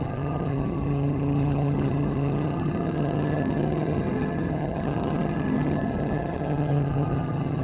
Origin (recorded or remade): remade